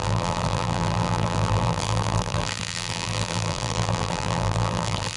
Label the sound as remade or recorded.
remade